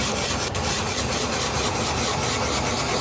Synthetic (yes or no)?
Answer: no